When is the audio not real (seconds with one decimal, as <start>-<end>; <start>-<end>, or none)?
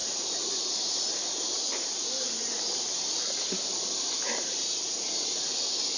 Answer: 0.0-0.6; 1.8-5.4